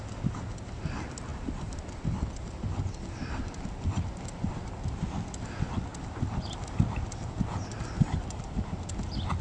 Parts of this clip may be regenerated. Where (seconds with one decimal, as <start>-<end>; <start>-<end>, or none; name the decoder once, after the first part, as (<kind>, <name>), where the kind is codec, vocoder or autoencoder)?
none